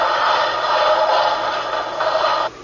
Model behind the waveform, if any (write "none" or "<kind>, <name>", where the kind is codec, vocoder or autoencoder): none